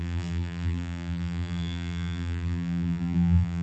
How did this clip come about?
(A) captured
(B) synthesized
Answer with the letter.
B